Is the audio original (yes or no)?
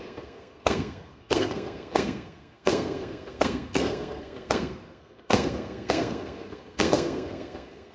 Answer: no